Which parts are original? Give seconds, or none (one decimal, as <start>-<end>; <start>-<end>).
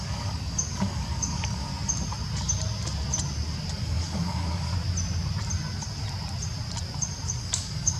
1.7-3.7; 4.7-7.4